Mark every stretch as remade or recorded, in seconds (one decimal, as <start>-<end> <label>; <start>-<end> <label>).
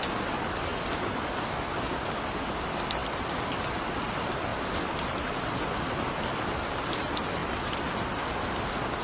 0.0-9.0 recorded